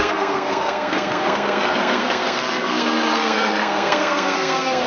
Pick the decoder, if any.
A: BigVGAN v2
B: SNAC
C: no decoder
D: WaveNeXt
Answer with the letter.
B